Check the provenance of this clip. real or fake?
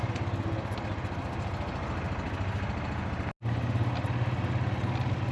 real